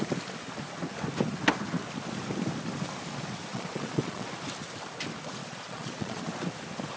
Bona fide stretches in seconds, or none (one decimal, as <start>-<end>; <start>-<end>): 0.0-3.5; 4.3-5.4; 6.2-7.0